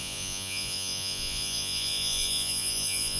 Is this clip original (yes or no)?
no